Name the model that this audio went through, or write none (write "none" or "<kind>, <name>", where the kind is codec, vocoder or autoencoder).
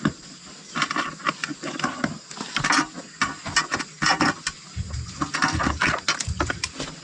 none